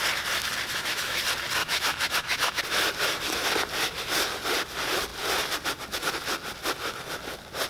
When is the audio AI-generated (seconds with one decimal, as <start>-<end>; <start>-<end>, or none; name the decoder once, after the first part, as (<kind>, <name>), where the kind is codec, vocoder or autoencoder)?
0.7-1.2 (autoencoder, DAC-VAE); 1.6-2.6